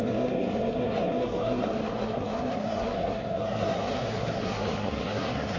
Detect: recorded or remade remade